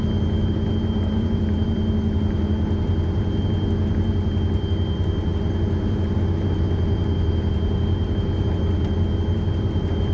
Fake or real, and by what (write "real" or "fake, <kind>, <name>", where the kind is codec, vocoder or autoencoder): fake, vocoder, BigVGAN v2